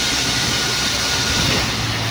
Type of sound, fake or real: real